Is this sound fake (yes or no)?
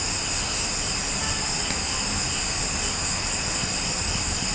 no